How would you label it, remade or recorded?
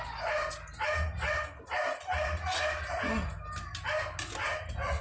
recorded